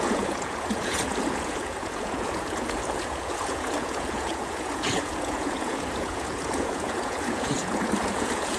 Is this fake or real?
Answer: fake